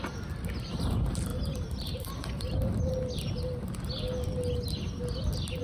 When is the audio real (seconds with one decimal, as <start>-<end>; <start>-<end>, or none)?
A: 0.0-1.3; 2.9-5.6